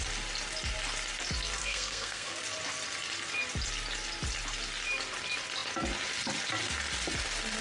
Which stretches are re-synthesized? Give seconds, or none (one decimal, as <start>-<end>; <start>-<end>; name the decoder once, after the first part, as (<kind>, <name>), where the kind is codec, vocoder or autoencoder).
1.6-2.4 (codec, SNAC)